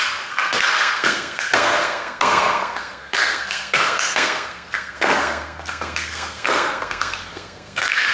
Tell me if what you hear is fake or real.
fake